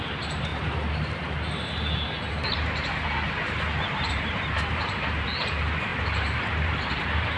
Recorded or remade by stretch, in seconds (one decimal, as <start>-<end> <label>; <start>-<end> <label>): 0.0-0.5 remade; 0.5-4.1 recorded; 4.1-7.4 remade